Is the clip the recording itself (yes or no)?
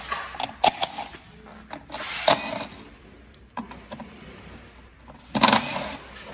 yes